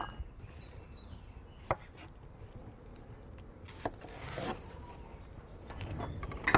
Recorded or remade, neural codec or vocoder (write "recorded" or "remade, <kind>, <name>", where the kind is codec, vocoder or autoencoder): recorded